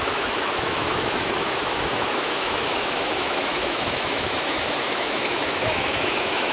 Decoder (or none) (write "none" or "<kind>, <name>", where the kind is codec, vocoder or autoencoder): autoencoder, DAC-VAE